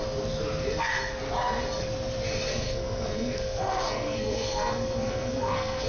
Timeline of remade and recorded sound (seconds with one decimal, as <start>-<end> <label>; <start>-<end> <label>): 0.0-2.5 recorded; 2.5-5.9 remade